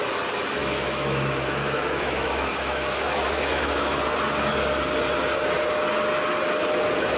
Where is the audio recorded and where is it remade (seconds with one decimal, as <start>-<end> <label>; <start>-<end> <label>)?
0.0-0.6 recorded; 0.6-4.0 remade; 4.0-7.2 recorded